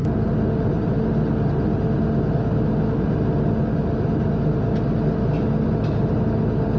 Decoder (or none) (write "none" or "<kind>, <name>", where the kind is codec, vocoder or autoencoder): none